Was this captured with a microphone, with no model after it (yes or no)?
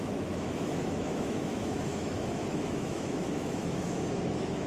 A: no